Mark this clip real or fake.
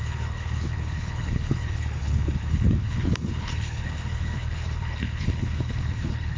fake